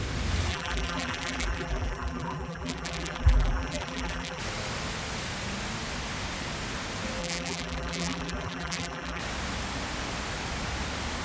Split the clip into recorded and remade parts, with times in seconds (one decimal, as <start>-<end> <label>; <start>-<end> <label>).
0.0-0.5 recorded; 0.5-4.4 remade; 4.4-7.2 recorded; 7.2-9.2 remade; 9.2-11.2 recorded